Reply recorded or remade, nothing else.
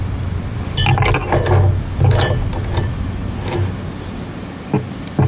recorded